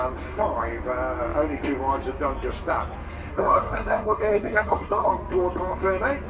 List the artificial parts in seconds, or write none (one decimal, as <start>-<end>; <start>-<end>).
3.3-5.1